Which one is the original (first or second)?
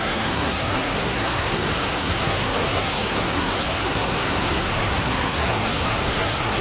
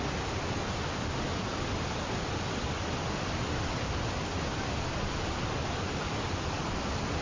second